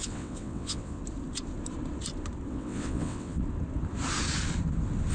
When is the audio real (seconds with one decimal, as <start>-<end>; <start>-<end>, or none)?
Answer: 1.0-2.5; 3.4-5.1